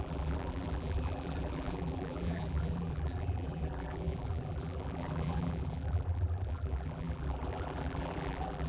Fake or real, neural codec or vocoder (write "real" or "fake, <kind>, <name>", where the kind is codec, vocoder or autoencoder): fake, vocoder, BigVGAN v2